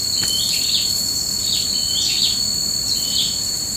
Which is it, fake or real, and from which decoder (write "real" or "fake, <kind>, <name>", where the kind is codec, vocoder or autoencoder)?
real